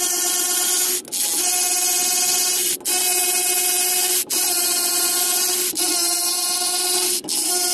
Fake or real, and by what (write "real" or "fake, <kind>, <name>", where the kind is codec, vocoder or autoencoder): real